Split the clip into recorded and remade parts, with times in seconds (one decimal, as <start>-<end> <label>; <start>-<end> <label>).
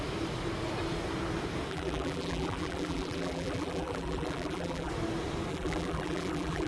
0.0-1.7 recorded; 1.7-4.9 remade; 4.9-5.5 recorded; 5.5-6.7 remade